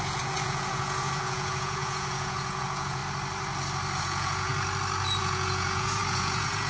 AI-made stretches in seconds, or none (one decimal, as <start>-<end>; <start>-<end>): 0.0-3.0; 4.0-4.5; 5.2-6.7